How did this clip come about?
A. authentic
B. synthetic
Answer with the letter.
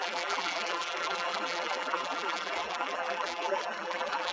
B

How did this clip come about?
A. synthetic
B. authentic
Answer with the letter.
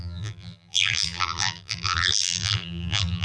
A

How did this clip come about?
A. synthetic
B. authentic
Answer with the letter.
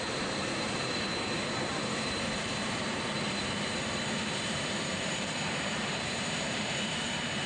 A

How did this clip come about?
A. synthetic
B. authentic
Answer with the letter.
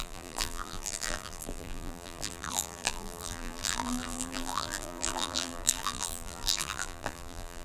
A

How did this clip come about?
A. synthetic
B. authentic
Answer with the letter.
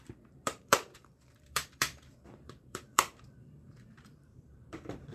A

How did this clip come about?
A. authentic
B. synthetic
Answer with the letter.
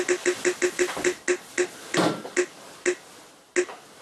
A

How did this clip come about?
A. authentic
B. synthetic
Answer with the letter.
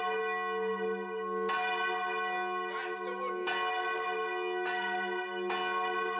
A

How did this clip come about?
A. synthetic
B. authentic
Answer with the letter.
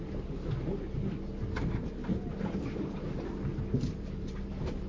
B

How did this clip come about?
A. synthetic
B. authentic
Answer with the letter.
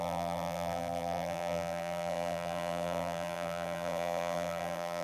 A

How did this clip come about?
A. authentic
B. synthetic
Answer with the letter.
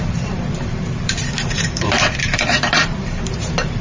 B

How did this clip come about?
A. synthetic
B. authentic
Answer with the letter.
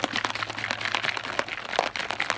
B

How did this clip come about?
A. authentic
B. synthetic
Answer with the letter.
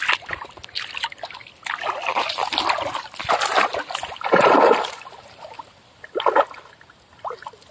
A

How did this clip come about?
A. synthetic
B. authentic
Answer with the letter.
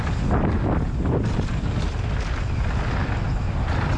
B